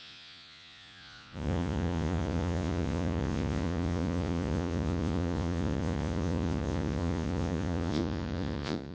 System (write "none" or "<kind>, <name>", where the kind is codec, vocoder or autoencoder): vocoder, Vocos